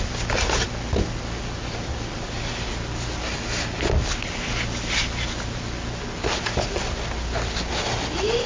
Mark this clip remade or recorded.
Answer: recorded